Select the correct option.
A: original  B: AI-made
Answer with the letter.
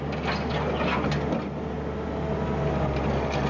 A